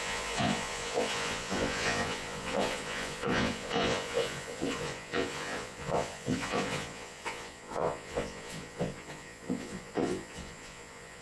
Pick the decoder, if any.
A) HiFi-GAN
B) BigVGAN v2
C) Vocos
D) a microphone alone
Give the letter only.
C